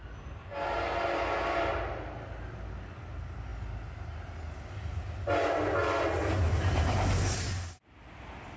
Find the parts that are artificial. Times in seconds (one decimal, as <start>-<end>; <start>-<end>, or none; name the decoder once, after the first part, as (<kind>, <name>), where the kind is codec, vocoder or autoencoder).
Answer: none